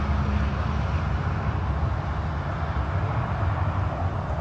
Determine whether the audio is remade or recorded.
recorded